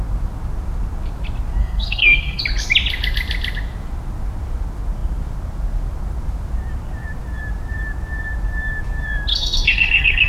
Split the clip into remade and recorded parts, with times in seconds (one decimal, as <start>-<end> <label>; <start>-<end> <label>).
0.0-1.6 recorded; 1.6-2.4 remade; 2.4-9.3 recorded; 9.3-10.3 remade